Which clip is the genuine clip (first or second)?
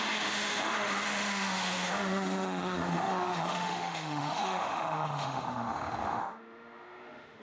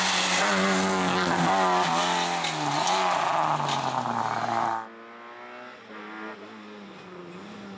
second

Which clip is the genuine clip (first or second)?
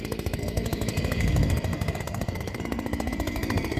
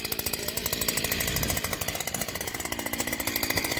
second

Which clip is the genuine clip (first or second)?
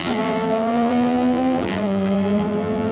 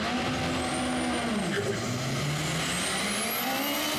second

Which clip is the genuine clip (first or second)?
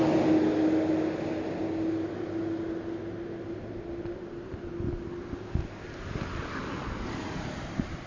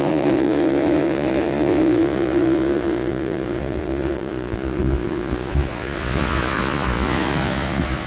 first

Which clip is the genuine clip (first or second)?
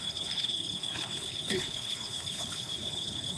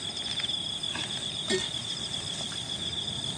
second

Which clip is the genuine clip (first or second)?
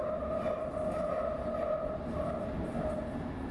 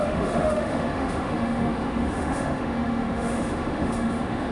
first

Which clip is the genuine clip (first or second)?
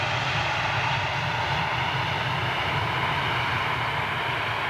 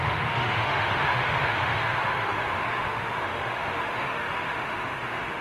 first